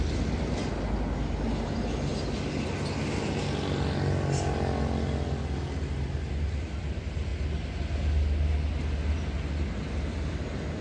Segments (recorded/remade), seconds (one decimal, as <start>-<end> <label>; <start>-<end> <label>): 0.0-10.8 recorded